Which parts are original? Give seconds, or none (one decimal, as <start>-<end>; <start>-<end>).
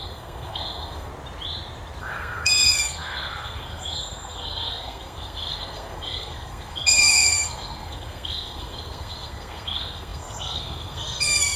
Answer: 1.1-2.0